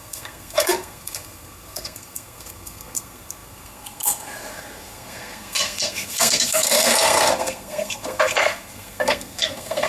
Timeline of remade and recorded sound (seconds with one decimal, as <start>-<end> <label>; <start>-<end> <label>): 0.0-9.9 remade